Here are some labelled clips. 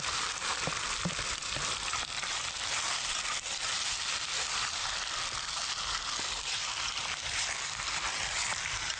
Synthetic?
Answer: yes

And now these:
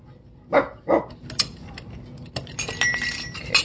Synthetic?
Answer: no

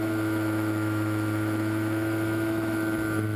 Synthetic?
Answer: yes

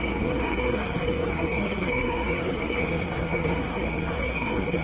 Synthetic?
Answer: yes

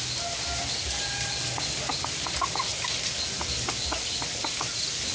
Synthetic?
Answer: no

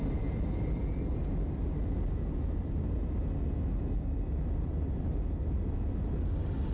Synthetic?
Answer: no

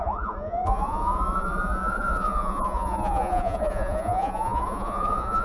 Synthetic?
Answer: yes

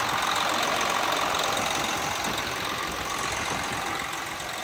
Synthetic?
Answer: no